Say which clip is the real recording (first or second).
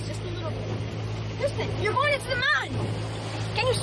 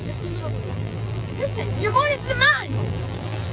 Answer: first